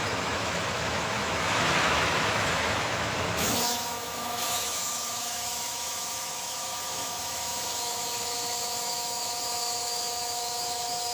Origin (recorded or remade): remade